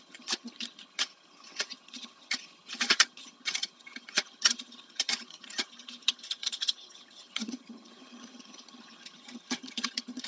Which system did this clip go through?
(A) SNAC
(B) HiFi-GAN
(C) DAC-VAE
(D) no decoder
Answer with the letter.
B